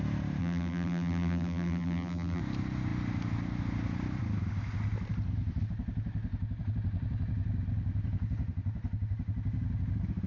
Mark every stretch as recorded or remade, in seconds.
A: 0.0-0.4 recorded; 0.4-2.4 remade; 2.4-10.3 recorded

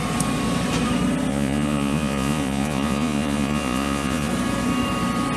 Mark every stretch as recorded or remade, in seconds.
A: 0.0-1.3 recorded; 1.3-4.3 remade; 4.3-5.4 recorded

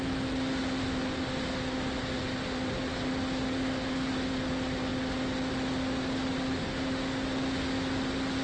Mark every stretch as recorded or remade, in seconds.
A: 0.0-8.4 recorded

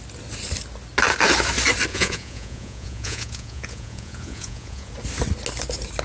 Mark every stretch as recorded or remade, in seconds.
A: 0.0-1.9 recorded; 1.9-4.9 remade; 4.9-6.0 recorded